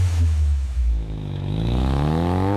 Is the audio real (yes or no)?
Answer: no